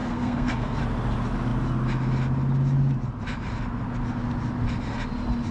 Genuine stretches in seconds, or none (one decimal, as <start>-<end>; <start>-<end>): 0.8-5.5